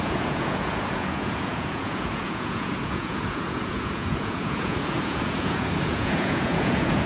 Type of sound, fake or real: fake